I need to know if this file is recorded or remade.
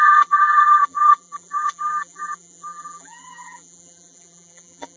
remade